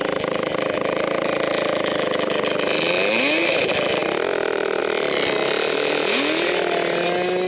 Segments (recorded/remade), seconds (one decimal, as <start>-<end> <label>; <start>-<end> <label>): 0.0-7.5 recorded

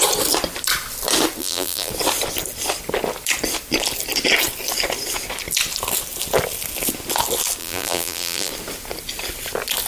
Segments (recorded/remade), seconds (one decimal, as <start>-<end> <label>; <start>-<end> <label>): 0.0-1.4 recorded; 1.4-1.9 remade; 1.9-7.6 recorded; 7.6-8.5 remade; 8.5-9.9 recorded

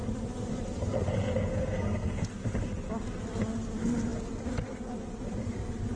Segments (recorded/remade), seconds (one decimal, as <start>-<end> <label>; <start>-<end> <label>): 0.0-1.5 recorded; 1.5-2.3 remade; 2.3-6.0 recorded

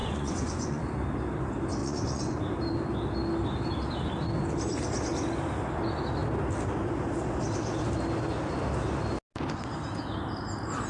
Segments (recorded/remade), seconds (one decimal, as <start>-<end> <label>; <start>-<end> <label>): 0.0-0.8 remade; 0.8-1.8 recorded; 1.8-2.4 remade; 2.4-10.9 recorded

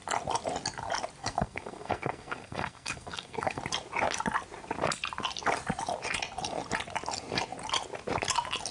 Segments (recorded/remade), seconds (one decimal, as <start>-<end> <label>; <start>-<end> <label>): 0.0-1.2 recorded; 1.2-3.6 remade; 3.6-8.7 recorded

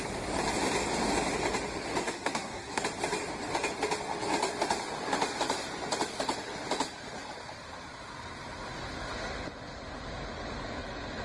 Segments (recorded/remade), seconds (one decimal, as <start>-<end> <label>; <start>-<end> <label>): 0.0-2.0 recorded; 2.0-2.8 remade; 2.8-11.2 recorded

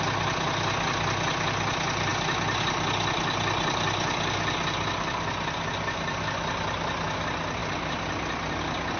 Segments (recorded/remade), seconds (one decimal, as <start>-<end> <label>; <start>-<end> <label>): 0.0-9.0 recorded